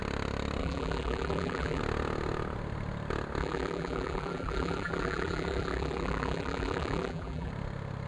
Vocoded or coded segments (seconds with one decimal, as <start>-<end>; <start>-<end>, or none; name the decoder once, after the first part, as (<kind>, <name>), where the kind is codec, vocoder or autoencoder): 0.6-1.8 (vocoder, BigVGAN v2); 3.4-7.5